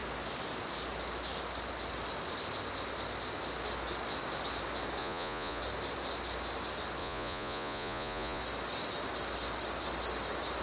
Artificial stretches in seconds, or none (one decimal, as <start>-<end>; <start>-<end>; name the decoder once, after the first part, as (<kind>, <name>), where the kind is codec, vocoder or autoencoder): 5.0-5.6 (vocoder, Vocos); 7.0-8.4

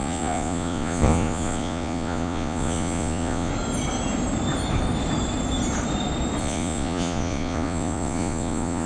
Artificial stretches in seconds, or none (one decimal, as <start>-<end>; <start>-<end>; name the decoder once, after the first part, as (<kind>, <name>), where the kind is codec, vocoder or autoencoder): 0.0-3.5 (vocoder, Vocos); 6.4-8.9